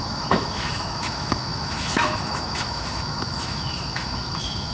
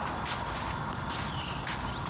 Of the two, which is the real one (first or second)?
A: second